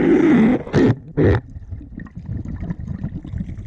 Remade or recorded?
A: recorded